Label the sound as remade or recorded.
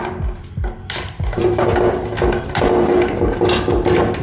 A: recorded